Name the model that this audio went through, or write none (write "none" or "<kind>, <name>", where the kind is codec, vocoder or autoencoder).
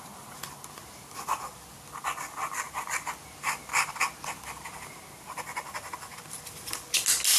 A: none